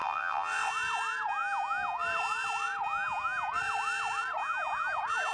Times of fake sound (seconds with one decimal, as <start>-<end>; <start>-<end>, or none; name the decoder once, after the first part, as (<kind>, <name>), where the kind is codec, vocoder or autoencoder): 0.0-0.7 (vocoder, WaveNeXt)